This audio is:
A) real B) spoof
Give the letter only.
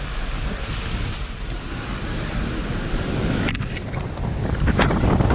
A